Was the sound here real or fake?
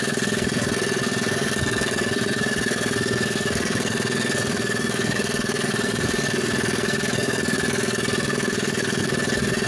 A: fake